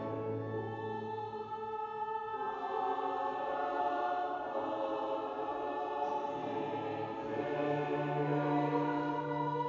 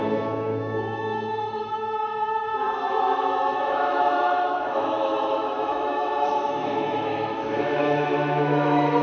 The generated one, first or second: second